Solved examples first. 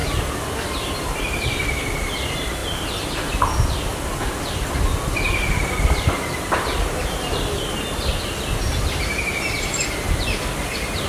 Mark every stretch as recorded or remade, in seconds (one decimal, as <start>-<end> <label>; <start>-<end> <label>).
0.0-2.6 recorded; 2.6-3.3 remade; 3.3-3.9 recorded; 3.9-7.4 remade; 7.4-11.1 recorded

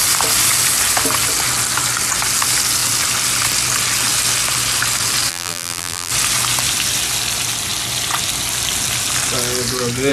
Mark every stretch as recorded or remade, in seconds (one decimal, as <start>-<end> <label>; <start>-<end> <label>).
0.0-5.3 recorded; 5.3-6.1 remade; 6.1-10.1 recorded

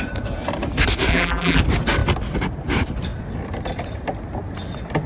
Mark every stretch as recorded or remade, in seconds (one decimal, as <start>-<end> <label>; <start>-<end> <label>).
0.0-1.1 recorded; 1.1-1.6 remade; 1.6-5.1 recorded

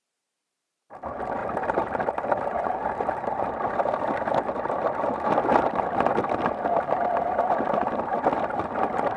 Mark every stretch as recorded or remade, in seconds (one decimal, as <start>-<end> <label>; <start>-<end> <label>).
0.0-1.4 recorded; 1.4-1.9 remade; 1.9-9.2 recorded

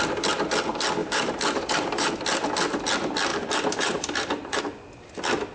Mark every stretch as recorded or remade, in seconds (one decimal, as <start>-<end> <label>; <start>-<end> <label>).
0.0-1.0 recorded; 1.0-2.1 remade; 2.1-3.3 recorded; 3.3-4.6 remade; 4.6-5.5 recorded

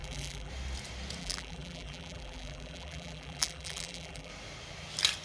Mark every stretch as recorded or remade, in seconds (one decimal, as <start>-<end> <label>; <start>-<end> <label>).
0.0-0.5 remade; 0.5-1.2 recorded; 1.2-4.3 remade; 4.3-5.2 recorded